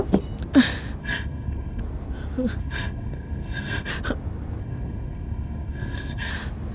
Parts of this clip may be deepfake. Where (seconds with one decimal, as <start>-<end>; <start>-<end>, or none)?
1.0-1.8; 2.6-3.9; 4.6-6.3